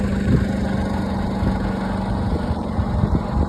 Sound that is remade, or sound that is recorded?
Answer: recorded